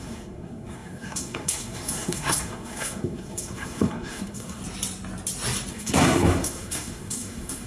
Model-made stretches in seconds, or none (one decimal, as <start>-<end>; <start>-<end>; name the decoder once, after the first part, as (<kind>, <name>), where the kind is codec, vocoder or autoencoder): 0.0-4.6 (codec, SNAC); 5.7-7.7